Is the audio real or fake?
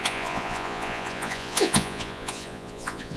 fake